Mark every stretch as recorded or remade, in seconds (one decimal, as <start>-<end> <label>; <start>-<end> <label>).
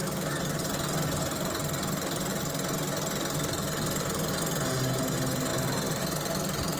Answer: 0.0-6.8 recorded